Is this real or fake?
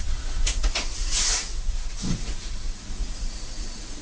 fake